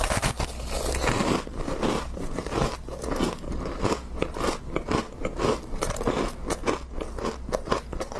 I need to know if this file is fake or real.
real